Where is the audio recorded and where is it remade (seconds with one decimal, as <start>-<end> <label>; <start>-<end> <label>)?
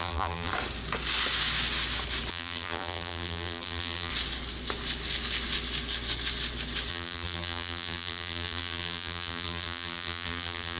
0.0-0.5 remade; 0.5-2.3 recorded; 2.3-4.1 remade; 4.1-6.9 recorded; 6.9-10.8 remade